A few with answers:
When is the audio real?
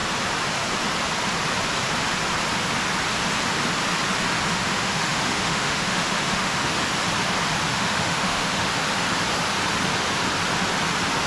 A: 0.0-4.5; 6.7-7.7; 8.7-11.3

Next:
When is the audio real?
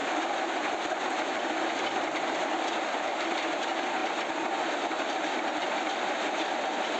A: 0.0-7.0